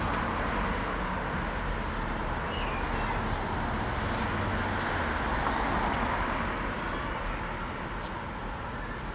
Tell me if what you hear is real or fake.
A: real